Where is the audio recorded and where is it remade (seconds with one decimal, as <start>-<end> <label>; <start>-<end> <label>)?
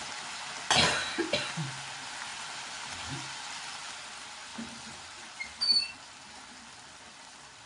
0.0-2.3 recorded; 2.3-3.9 remade; 3.9-4.5 recorded; 4.5-5.6 remade; 5.6-7.7 recorded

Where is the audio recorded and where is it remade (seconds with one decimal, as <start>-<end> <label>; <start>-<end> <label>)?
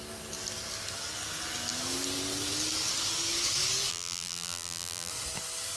0.0-3.9 recorded; 3.9-5.1 remade; 5.1-5.8 recorded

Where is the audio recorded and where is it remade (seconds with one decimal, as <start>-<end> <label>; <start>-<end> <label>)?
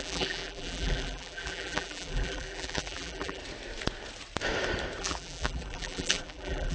0.0-3.4 remade; 3.4-5.0 recorded; 5.0-6.7 remade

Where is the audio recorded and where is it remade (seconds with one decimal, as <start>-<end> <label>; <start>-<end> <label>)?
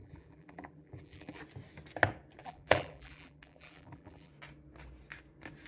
0.0-1.4 remade; 1.4-2.4 recorded; 2.4-4.3 remade; 4.3-5.7 recorded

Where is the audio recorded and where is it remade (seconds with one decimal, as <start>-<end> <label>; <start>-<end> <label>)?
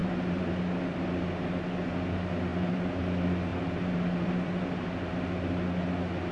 0.0-0.5 remade; 0.5-2.5 recorded; 2.5-3.0 remade; 3.0-3.5 recorded; 3.5-5.1 remade; 5.1-6.3 recorded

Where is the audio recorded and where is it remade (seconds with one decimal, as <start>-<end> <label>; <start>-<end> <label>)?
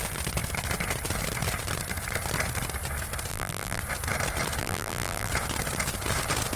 0.0-3.3 recorded; 3.3-3.8 remade; 3.8-4.6 recorded; 4.6-5.3 remade; 5.3-6.6 recorded